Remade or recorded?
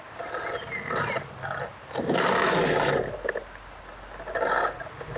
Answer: recorded